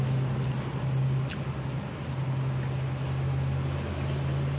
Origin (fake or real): real